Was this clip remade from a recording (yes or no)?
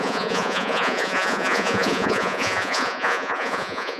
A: yes